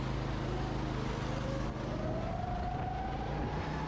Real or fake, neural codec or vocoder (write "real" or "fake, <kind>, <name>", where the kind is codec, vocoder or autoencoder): real